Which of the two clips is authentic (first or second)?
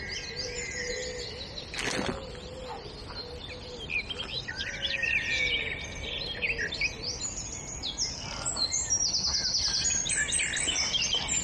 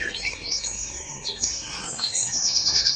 first